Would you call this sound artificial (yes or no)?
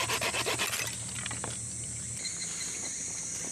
no